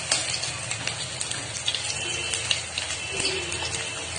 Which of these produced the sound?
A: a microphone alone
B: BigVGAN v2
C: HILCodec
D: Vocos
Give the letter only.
A